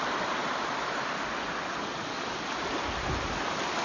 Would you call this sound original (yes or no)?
yes